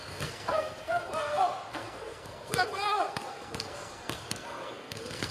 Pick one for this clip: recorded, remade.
remade